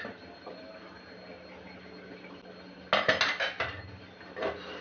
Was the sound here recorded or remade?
recorded